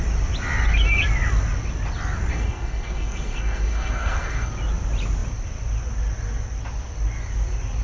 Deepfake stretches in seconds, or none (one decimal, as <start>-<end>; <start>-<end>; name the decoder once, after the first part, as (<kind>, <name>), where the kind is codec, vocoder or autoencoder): 2.3-4.5 (codec, SNAC)